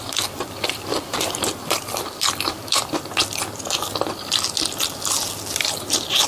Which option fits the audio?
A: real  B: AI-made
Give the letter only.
A